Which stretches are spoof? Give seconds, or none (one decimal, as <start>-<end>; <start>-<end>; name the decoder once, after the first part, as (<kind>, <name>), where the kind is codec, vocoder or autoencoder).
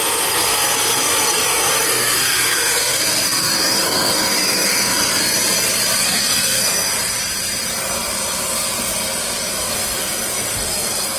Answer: 0.0-5.0 (codec, SNAC); 6.0-6.9; 9.5-11.2